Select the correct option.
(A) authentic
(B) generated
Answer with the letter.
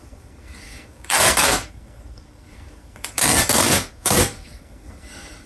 B